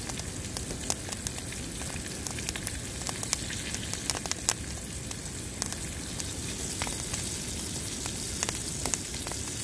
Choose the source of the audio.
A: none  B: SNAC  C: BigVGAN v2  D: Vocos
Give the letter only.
A